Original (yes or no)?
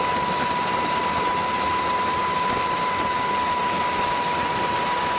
yes